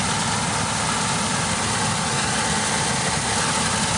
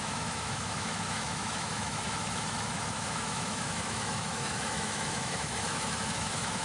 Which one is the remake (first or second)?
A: second